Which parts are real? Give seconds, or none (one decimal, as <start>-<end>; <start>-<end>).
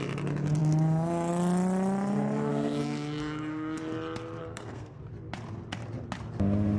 0.0-2.5; 3.8-4.4; 5.0-6.8